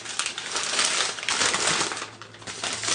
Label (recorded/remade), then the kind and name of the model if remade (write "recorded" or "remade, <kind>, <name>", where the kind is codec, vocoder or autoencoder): recorded